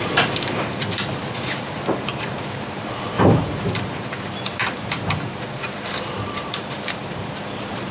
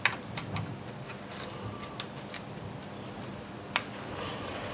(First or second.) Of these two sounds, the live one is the second